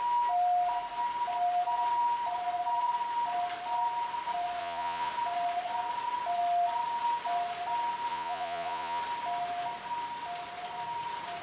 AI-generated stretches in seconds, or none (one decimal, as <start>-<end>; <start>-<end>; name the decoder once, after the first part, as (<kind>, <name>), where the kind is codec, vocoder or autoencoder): 4.6-5.1 (vocoder, Vocos); 8.1-9.0